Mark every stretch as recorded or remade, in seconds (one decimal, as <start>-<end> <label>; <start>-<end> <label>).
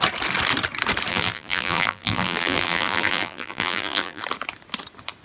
0.0-1.1 recorded; 1.1-4.2 remade; 4.2-5.2 recorded